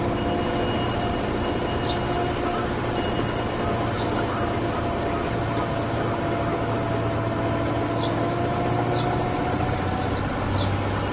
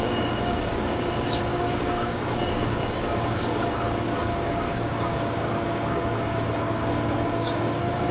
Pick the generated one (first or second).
second